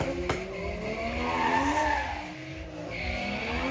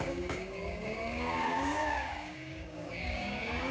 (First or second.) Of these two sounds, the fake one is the second